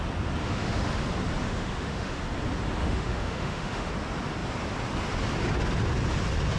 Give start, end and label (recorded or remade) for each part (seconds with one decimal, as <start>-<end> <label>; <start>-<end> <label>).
0.0-0.4 recorded; 0.4-1.0 remade; 1.0-1.4 recorded; 1.4-2.2 remade; 2.2-2.8 recorded; 2.8-3.9 remade; 3.9-6.6 recorded